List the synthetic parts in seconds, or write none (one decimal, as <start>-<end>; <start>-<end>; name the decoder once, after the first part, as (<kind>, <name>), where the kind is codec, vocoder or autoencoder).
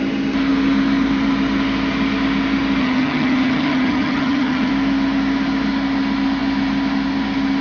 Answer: 2.8-4.7 (vocoder, HiFi-GAN)